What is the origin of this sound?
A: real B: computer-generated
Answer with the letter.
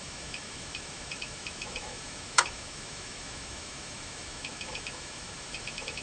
B